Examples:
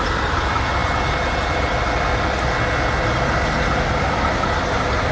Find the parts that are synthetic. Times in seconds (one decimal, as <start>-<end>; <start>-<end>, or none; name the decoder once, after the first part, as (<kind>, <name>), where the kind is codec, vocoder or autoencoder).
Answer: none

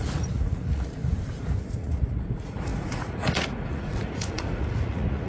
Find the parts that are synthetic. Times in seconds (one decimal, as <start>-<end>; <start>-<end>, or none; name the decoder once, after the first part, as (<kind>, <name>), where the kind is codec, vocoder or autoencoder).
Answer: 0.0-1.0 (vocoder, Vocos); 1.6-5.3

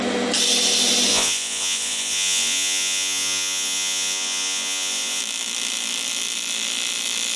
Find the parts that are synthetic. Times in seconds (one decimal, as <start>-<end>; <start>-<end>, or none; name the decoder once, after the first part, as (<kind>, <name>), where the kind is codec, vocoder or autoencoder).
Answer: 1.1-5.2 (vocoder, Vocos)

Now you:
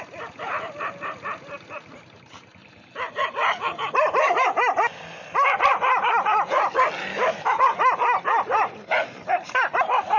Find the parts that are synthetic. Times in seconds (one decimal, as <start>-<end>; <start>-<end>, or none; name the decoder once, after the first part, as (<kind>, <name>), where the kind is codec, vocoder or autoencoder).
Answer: 7.1-7.6 (autoencoder, DAC-VAE)